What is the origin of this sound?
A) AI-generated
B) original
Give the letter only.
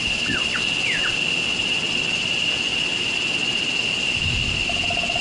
B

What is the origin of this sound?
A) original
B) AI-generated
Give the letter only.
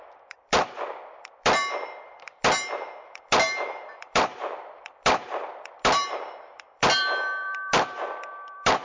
B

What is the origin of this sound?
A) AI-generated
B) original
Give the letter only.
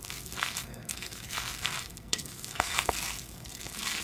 A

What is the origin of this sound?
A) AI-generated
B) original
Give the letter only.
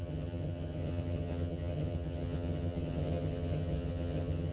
A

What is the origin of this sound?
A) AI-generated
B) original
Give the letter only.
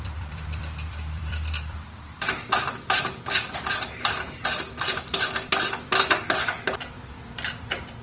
A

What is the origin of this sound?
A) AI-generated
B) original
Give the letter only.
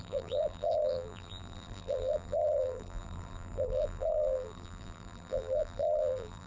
A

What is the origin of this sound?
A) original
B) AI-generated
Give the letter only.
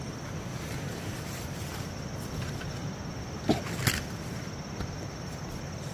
A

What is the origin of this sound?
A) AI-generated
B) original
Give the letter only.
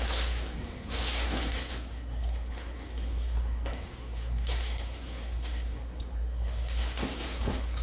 A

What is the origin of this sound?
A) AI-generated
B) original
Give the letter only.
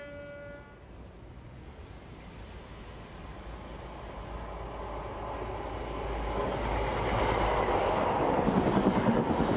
B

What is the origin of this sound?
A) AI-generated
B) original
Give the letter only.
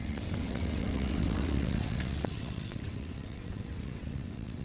A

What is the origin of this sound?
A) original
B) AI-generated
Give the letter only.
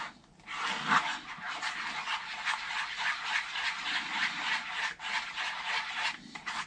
A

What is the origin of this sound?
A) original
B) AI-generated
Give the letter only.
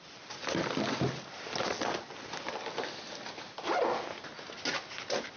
A